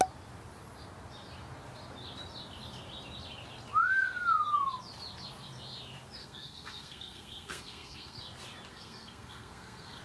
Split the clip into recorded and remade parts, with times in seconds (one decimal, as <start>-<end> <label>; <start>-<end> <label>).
0.0-6.2 recorded; 6.2-8.2 remade; 8.2-8.7 recorded; 8.7-10.0 remade